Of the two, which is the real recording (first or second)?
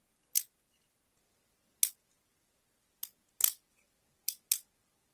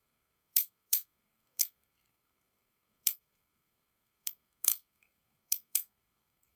first